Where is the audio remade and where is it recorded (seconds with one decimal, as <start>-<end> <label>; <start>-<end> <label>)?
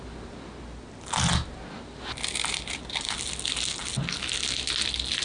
0.0-5.2 recorded